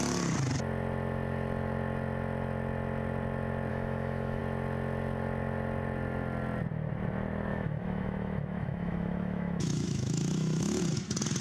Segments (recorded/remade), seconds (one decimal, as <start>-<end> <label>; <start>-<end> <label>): 0.0-3.7 recorded; 3.7-4.4 remade; 4.4-7.5 recorded; 7.5-10.8 remade; 10.8-11.4 recorded